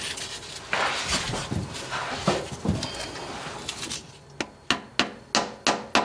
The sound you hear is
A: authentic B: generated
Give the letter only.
A